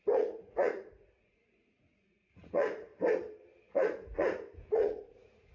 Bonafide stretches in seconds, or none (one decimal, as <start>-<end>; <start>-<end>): 2.9-3.7